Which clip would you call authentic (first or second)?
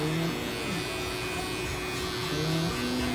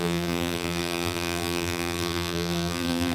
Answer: first